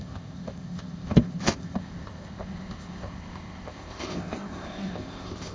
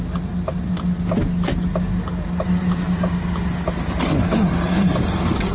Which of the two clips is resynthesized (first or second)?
first